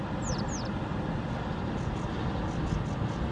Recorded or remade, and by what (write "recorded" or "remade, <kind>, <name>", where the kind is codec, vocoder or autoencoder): recorded